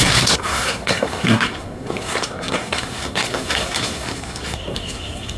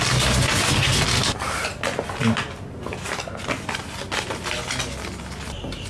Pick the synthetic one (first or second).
first